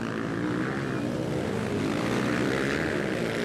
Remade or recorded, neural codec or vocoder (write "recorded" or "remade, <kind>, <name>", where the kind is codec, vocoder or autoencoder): recorded